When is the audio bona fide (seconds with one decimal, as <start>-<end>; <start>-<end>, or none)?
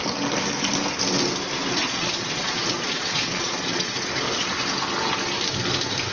0.0-1.8; 3.9-6.1